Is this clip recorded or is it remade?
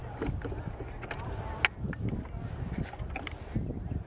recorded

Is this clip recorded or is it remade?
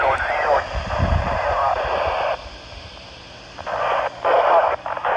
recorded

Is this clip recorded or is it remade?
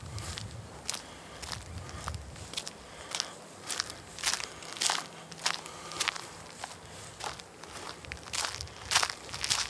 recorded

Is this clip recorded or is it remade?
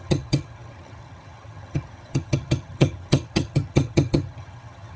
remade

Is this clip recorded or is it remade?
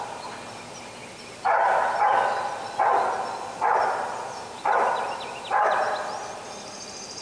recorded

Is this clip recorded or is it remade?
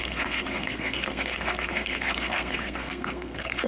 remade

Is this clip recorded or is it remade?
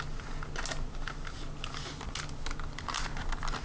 recorded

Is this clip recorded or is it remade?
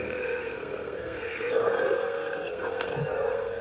remade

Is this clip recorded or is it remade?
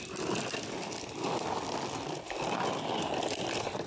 recorded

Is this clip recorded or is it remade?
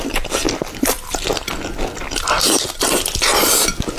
recorded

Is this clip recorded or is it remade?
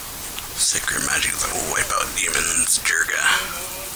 recorded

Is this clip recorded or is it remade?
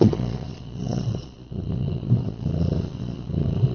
remade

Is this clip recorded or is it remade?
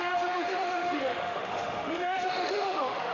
remade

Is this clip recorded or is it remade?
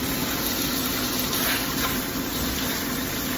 recorded